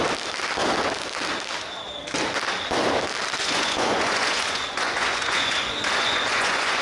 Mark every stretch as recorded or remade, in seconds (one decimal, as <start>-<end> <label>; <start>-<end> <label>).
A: 0.0-3.4 recorded; 3.4-6.8 remade